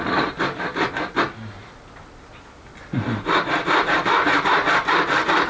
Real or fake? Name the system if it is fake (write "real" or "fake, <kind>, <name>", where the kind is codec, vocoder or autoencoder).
real